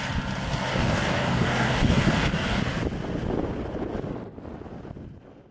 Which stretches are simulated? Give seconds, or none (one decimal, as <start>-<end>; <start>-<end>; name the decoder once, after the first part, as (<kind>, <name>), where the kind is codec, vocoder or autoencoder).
0.7-2.6 (codec, DAC)